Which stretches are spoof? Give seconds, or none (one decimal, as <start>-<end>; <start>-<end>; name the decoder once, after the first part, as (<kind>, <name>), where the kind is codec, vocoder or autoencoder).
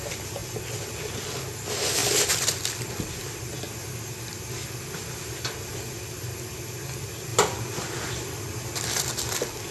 2.0-2.8 (vocoder, BigVGAN v2); 7.3-9.0